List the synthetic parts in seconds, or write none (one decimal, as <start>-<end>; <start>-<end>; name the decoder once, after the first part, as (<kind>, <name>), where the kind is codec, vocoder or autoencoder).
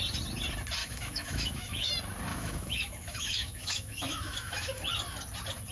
0.8-1.9 (autoencoder, DAC-VAE); 2.3-4.8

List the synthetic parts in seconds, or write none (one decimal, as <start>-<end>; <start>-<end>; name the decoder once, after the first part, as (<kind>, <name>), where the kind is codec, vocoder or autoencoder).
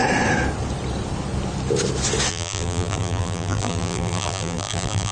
2.3-5.1 (vocoder, BigVGAN v2)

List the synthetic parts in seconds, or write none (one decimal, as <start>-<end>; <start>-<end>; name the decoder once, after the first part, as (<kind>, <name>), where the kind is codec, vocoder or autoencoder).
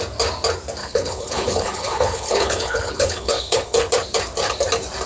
0.8-3.9 (codec, HILCodec)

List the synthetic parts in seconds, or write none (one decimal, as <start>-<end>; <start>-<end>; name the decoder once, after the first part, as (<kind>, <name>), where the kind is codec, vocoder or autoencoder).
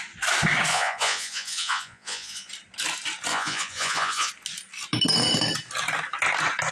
0.7-2.5 (vocoder, Vocos); 3.3-4.3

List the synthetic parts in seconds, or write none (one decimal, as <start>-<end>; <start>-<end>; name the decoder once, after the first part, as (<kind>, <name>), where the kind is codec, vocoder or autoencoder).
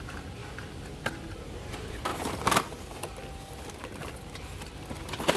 0.0-0.4 (vocoder, BigVGAN v2); 1.3-2.1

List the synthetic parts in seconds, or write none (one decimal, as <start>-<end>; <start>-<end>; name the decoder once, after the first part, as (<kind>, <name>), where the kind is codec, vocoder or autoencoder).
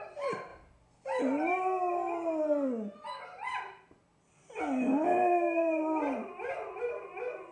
none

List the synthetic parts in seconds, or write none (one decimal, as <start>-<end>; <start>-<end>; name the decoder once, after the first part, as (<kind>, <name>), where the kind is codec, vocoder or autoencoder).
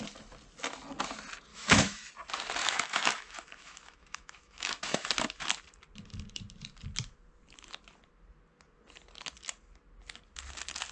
1.5-2.1 (autoencoder, DAC-VAE); 2.6-5.1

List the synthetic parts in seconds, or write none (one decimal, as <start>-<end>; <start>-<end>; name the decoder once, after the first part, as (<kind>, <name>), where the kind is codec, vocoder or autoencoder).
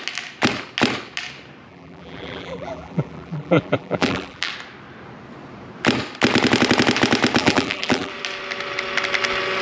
1.7-4.5 (vocoder, BigVGAN v2); 7.4-8.1